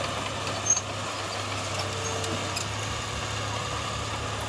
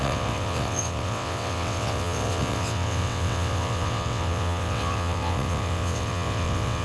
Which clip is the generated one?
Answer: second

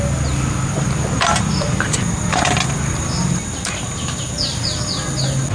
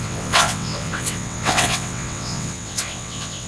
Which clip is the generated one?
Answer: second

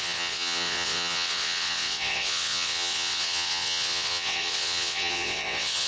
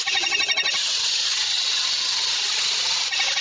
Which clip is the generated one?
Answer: first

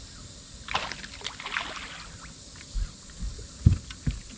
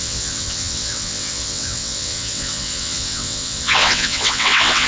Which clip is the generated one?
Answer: second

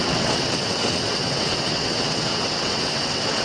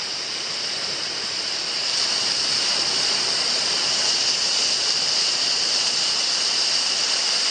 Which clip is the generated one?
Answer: first